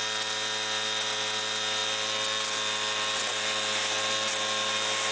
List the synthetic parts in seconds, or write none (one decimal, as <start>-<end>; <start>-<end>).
none